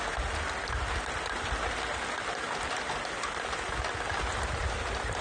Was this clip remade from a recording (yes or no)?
no